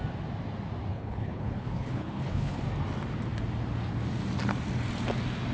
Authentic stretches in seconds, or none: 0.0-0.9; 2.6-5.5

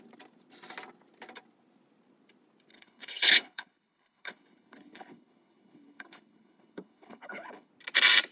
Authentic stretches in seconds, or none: 0.0-2.7; 7.7-8.3

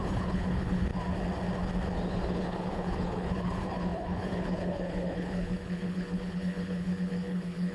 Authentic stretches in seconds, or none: 0.9-2.1